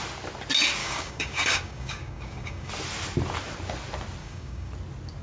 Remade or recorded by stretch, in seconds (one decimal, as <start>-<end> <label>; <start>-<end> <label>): 0.0-0.8 recorded; 0.8-2.7 remade; 2.7-4.2 recorded; 4.2-4.7 remade; 4.7-5.2 recorded